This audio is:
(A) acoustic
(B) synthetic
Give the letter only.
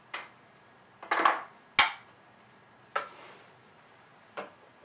A